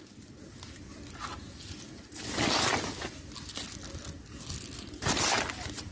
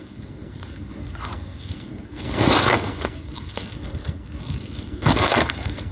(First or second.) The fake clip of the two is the second